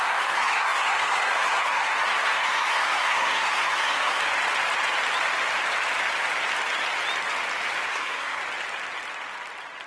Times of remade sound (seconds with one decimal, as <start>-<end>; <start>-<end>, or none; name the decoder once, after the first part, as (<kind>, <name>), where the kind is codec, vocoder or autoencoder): 0.0-4.2 (codec, SNAC); 7.9-8.4